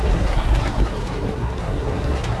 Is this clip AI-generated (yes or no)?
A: yes